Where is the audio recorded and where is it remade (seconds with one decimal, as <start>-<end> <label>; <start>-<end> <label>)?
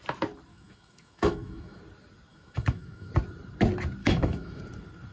0.0-0.5 recorded; 0.5-1.8 remade; 1.8-2.3 recorded; 2.3-3.1 remade; 3.1-4.0 recorded; 4.0-4.6 remade; 4.6-5.1 recorded